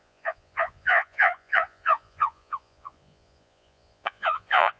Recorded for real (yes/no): no